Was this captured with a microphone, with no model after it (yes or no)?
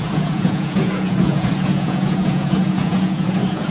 no